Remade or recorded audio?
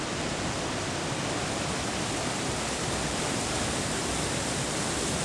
recorded